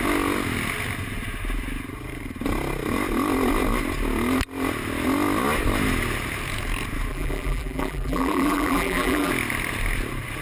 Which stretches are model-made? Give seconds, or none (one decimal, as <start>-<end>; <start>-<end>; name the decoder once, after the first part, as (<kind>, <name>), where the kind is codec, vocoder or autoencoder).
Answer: 7.1-9.3 (vocoder, BigVGAN v2)